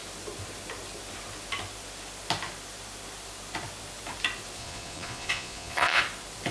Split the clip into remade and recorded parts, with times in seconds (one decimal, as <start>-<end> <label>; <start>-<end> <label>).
0.0-4.6 recorded; 4.6-6.0 remade; 6.0-6.5 recorded

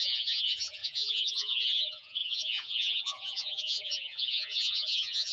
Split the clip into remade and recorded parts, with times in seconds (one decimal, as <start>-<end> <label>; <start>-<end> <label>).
0.0-5.3 remade

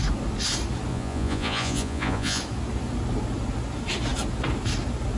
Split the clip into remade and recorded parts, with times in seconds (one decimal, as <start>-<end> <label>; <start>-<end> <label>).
0.0-0.9 recorded; 0.9-2.4 remade; 2.4-5.2 recorded

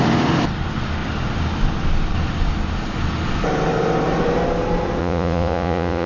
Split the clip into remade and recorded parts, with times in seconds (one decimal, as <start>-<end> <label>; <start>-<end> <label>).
0.0-5.0 recorded; 5.0-6.1 remade